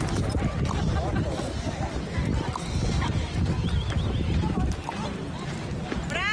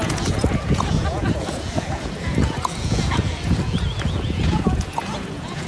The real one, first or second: first